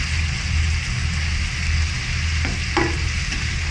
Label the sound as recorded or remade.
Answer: recorded